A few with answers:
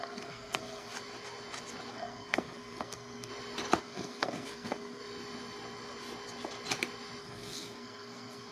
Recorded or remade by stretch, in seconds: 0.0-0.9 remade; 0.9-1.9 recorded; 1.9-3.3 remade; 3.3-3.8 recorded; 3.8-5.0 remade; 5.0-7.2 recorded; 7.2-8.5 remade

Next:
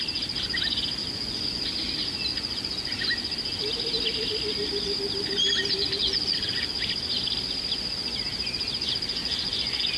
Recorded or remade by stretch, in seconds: 0.0-1.0 recorded; 1.0-1.9 remade; 1.9-2.3 recorded; 2.3-3.0 remade; 3.0-6.0 recorded; 6.0-6.7 remade; 6.7-9.2 recorded; 9.2-10.0 remade

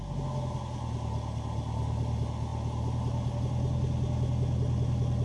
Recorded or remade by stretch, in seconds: 0.0-5.2 recorded